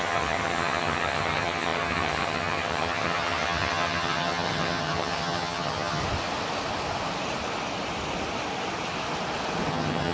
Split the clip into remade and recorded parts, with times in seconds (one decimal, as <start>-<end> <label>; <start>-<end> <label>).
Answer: 0.0-6.0 remade; 6.0-9.7 recorded; 9.7-10.1 remade